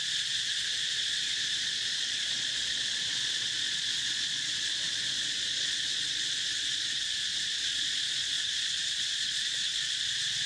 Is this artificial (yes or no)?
yes